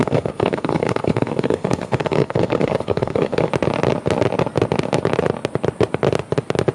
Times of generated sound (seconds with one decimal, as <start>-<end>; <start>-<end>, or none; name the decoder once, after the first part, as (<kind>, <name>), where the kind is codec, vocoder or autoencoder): 0.0-3.5 (codec, SNAC)

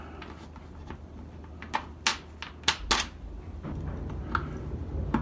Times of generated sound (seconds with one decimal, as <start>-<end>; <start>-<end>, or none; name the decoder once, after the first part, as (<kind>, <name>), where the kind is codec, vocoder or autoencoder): none

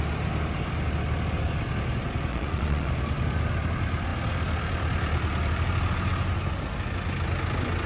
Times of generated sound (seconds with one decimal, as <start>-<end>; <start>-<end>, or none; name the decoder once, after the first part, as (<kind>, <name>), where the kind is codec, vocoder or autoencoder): 2.3-2.9 (vocoder, Vocos)

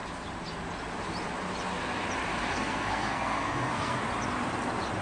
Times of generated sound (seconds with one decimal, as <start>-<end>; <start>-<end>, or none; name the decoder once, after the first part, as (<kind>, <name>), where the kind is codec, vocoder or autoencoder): 2.5-4.0 (codec, SNAC)

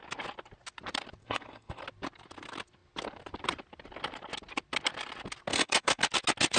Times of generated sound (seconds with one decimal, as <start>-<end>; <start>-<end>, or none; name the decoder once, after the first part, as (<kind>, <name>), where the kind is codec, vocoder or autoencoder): 1.2-1.8 (codec, SNAC); 5.5-6.0

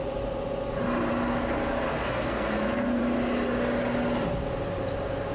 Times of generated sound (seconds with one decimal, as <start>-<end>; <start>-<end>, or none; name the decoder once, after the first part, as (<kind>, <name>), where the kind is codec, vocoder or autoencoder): 1.9-3.0 (codec, SNAC)

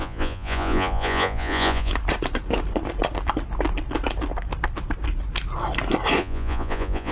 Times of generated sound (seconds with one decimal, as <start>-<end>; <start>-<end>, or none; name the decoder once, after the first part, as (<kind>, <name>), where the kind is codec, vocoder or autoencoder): 0.0-1.9 (vocoder, Vocos); 6.2-7.1

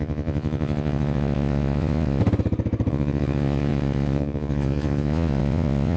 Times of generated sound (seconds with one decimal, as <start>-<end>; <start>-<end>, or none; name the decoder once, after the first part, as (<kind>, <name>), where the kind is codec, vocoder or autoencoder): 0.0-2.2 (vocoder, Vocos); 2.9-6.0